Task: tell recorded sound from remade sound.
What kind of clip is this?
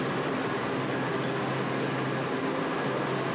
recorded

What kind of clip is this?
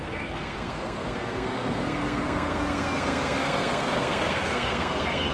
remade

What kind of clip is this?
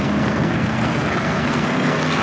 remade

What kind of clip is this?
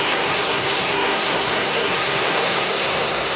remade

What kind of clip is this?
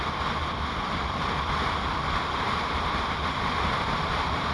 recorded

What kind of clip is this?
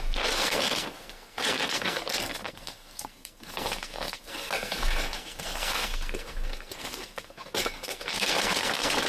remade